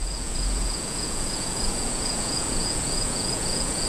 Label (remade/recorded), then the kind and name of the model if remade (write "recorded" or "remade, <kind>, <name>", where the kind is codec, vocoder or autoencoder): remade, vocoder, Vocos